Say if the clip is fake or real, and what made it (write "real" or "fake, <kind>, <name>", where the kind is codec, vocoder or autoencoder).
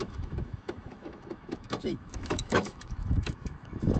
fake, autoencoder, DAC-VAE